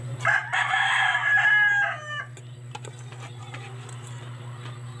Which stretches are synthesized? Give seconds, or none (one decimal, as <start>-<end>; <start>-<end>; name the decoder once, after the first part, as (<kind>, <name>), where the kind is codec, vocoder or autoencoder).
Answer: none